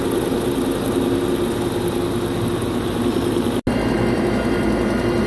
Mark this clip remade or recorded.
recorded